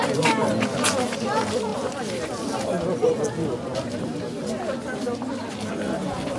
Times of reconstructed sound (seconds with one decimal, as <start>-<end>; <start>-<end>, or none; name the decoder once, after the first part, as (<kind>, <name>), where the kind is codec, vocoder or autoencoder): none